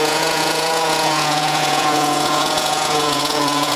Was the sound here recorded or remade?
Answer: remade